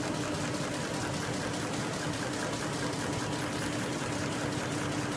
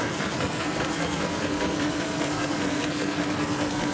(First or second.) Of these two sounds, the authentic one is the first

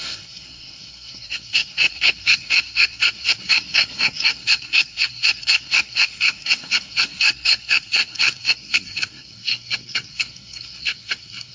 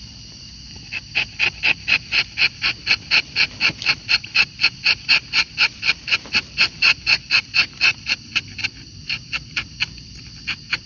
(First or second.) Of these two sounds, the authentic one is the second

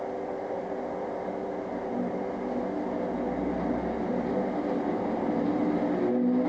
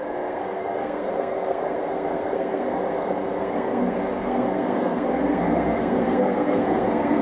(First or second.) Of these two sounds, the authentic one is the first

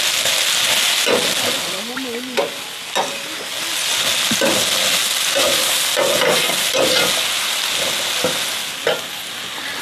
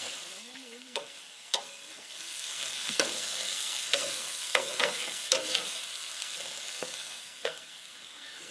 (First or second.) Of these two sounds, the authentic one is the first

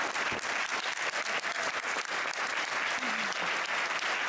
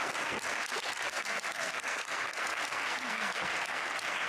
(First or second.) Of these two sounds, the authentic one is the first